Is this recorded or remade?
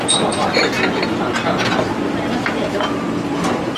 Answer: recorded